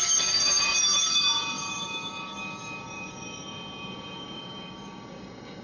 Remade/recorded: remade